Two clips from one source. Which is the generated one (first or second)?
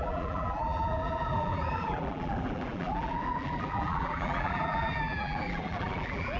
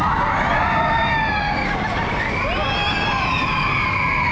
first